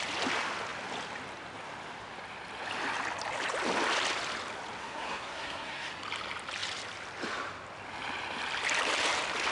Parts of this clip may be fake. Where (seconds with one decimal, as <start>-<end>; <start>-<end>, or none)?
4.8-5.9